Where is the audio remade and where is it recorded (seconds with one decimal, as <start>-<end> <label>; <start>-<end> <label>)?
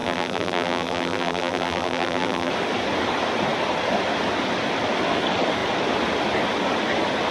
0.0-2.5 remade; 2.5-7.3 recorded